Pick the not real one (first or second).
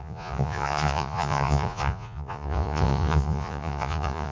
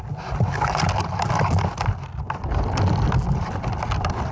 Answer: first